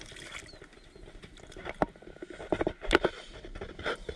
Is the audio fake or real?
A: real